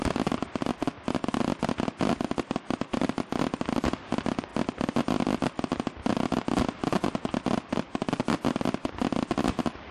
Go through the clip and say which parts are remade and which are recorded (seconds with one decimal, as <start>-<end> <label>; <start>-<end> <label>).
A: 0.0-9.9 recorded